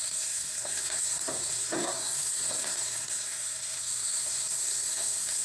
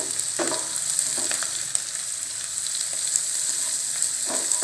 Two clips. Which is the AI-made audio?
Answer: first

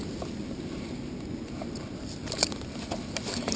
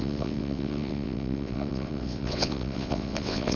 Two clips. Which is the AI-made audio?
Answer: second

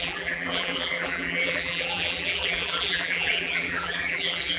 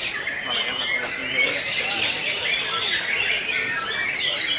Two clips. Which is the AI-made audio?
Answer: first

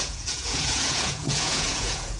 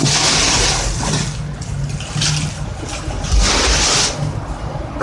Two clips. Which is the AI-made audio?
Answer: first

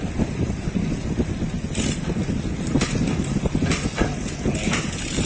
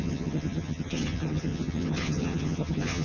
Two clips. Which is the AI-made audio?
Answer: second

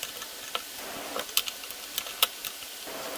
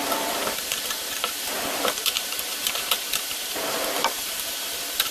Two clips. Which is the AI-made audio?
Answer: second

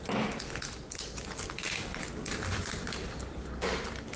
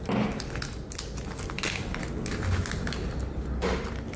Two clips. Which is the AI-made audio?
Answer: first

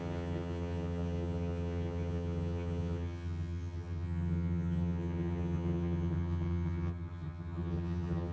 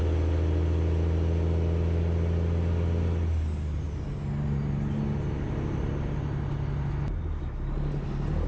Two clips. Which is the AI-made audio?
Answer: first